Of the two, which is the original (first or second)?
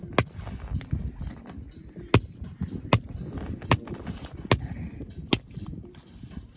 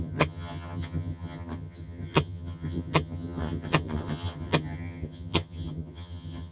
first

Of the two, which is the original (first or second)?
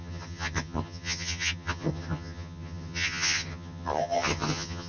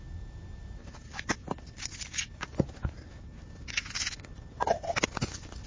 second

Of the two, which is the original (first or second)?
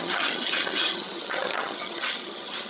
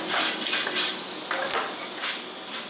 second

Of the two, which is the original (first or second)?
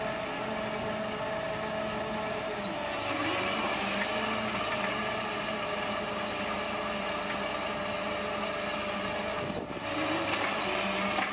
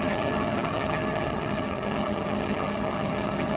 first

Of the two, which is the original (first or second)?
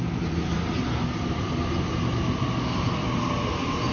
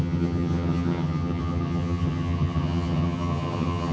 first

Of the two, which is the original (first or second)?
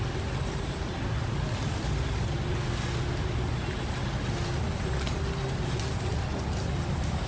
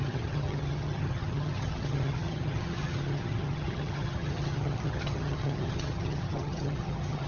first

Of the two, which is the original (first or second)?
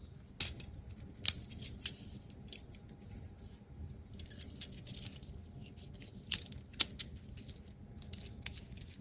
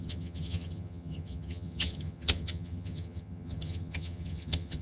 first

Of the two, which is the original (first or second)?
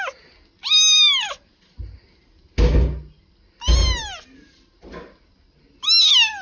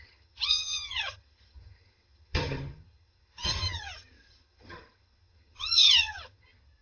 first